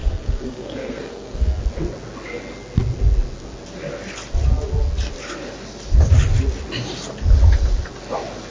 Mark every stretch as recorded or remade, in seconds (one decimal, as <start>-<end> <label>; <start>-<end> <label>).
0.0-1.6 remade; 1.6-8.5 recorded